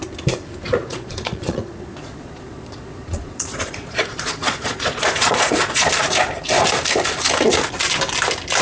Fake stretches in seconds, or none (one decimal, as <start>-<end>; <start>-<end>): 0.8-5.9